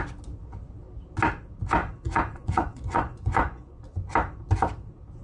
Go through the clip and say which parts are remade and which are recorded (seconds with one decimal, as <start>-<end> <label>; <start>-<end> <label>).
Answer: 0.0-1.8 recorded; 1.8-3.8 remade; 3.8-5.2 recorded